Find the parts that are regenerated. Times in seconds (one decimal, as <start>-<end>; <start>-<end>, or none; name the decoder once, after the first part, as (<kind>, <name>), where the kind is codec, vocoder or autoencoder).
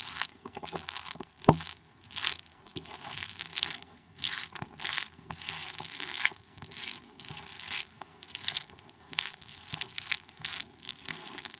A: 0.0-11.6 (codec, SNAC)